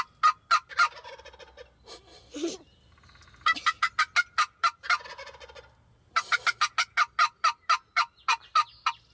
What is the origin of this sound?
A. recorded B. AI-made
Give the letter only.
A